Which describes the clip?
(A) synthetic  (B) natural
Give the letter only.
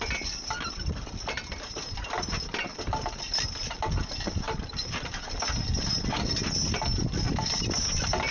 B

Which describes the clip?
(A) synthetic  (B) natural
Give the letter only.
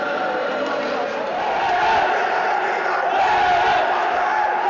B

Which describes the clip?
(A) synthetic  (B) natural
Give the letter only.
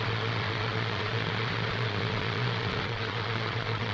A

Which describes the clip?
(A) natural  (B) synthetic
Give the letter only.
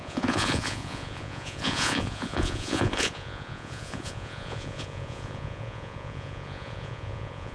B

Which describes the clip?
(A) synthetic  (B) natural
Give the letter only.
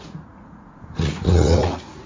A